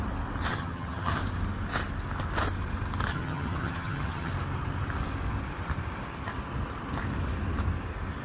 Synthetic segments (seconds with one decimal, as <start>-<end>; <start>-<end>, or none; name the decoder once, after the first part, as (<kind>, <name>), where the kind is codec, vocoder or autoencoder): 0.5-1.2 (vocoder, HiFi-GAN); 3.1-4.3